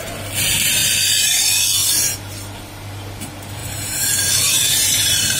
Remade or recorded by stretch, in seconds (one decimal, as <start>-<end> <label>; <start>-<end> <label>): 0.0-3.6 recorded; 3.6-5.4 remade